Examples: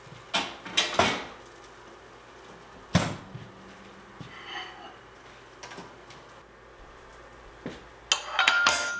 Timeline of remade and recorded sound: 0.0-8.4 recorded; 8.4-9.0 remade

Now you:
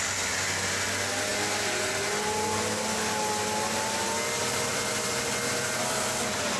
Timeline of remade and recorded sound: 0.0-4.7 recorded; 4.7-6.6 remade